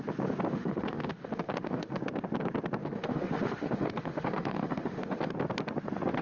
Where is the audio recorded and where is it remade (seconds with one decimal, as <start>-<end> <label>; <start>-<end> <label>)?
0.0-0.5 recorded; 0.5-2.0 remade; 2.0-2.8 recorded; 2.8-5.3 remade; 5.3-6.2 recorded